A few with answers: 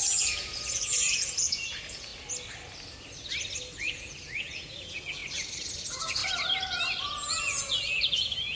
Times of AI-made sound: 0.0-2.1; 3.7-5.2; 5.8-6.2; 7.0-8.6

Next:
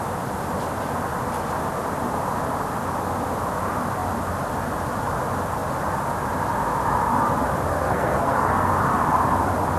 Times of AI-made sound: 7.7-8.7

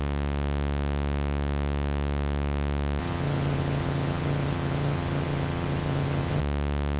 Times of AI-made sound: 3.0-6.4

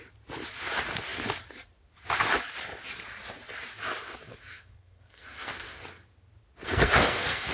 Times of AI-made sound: 4.3-5.8; 6.6-7.5

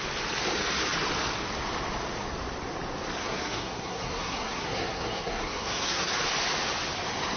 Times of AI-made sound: 3.2-6.1